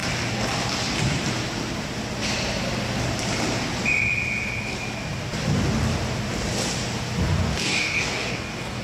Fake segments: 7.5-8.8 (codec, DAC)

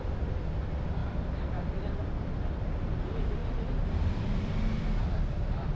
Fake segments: none